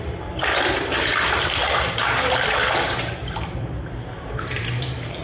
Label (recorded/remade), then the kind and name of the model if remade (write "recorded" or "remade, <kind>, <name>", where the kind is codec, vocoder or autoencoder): remade, vocoder, BigVGAN v2